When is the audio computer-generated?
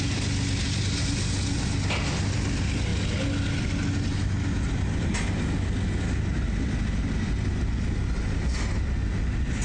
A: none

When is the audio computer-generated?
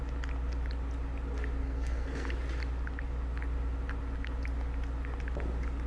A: 1.6-2.3 (codec, SNAC)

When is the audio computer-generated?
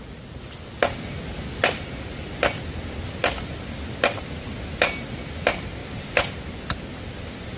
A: none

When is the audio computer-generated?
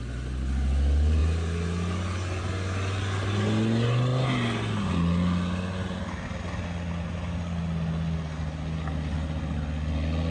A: none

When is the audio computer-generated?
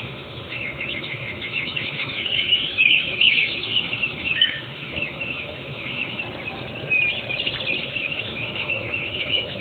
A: 0.0-6.2 (autoencoder, DAC-VAE); 7.8-9.6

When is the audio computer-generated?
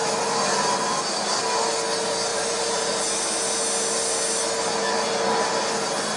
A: 0.0-1.4 (vocoder, BigVGAN v2); 2.3-3.0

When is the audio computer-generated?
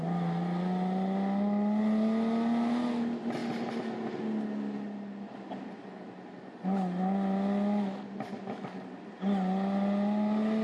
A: none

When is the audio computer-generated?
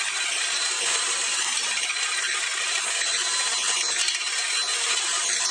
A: none